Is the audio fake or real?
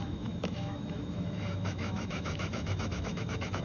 fake